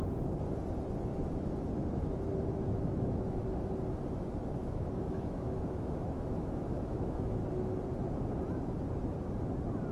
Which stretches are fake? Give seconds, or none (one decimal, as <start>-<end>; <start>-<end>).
1.1-3.4; 4.6-7.4